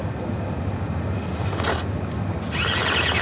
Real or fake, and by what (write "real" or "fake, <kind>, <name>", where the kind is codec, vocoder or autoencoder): real